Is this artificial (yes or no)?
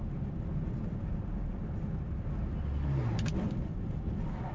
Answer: no